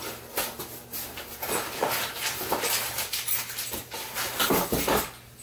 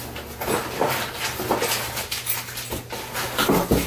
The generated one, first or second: first